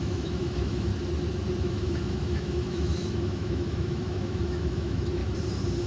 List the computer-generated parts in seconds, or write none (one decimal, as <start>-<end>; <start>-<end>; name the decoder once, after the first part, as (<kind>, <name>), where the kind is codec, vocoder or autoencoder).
0.0-0.9 (autoencoder, DAC-VAE); 1.6-5.2